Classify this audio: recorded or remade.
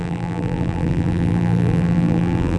remade